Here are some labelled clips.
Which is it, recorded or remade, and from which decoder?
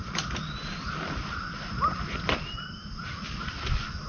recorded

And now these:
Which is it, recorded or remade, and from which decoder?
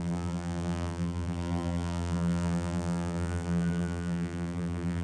remade, vocoder, BigVGAN v2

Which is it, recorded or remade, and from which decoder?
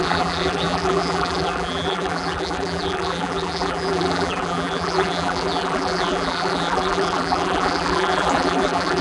remade, vocoder, BigVGAN v2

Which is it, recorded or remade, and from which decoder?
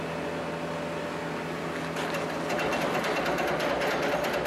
recorded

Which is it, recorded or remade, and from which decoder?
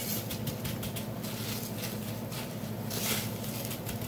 recorded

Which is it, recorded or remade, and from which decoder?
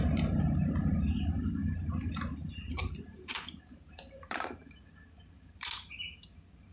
remade, vocoder, BigVGAN v2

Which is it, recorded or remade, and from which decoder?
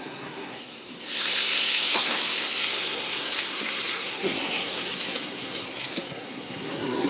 remade, codec, SNAC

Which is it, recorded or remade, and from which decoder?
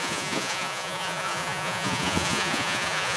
remade, vocoder, Vocos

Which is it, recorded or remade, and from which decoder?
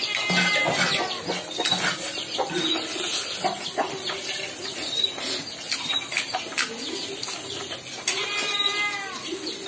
recorded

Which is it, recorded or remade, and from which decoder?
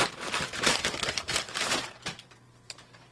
remade, vocoder, BigVGAN v2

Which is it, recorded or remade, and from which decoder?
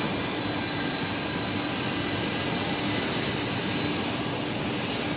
recorded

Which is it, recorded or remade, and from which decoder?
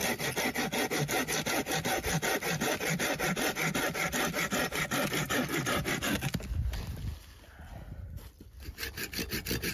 recorded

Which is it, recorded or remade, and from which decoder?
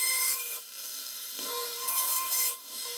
remade, codec, DAC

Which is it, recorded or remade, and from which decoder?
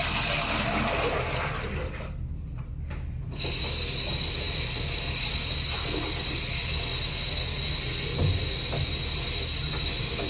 recorded